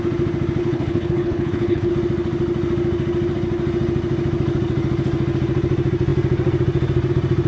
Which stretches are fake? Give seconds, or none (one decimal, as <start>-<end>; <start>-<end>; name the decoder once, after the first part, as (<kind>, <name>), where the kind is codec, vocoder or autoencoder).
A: 0.6-1.9 (codec, HILCodec)